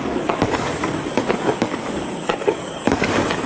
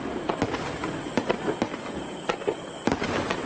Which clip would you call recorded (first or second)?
second